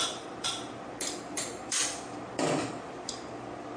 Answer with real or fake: fake